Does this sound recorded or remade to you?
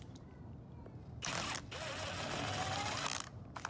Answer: recorded